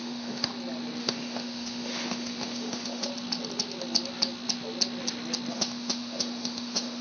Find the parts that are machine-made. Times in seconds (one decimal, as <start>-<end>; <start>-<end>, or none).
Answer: 0.0-0.5; 1.0-3.1; 5.5-7.0